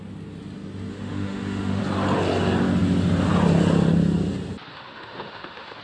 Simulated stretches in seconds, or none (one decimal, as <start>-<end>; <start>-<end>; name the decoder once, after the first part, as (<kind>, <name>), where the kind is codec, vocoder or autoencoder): 0.9-1.8 (autoencoder, DAC-VAE); 4.7-5.8